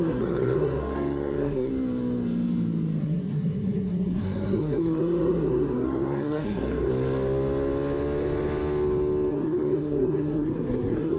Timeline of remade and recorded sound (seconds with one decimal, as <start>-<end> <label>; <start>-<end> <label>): 0.0-1.7 remade; 1.7-3.0 recorded; 3.0-6.9 remade; 6.9-9.3 recorded; 9.3-11.2 remade